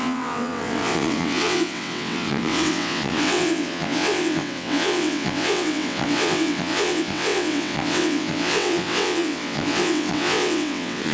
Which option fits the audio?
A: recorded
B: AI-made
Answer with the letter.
B